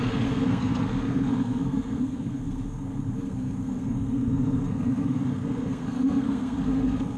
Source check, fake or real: fake